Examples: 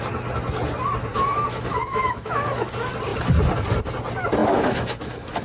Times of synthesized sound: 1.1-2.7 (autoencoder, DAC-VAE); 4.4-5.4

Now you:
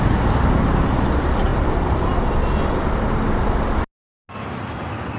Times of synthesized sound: none

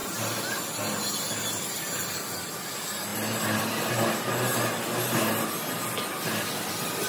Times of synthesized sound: none

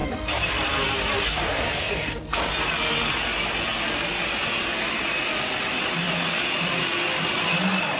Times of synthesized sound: none

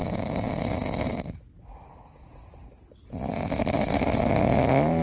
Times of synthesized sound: none

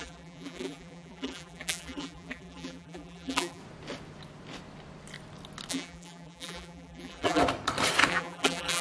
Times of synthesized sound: 0.0-3.6 (vocoder, BigVGAN v2); 5.7-7.4; 8.1-8.8

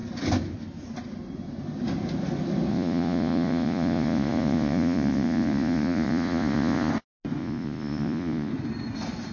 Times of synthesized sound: 2.7-6.9 (vocoder, Vocos); 7.4-8.5